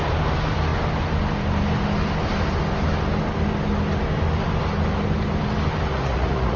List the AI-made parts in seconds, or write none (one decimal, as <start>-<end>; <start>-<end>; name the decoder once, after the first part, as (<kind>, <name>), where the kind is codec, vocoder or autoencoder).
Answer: 5.9-6.6 (vocoder, Vocos)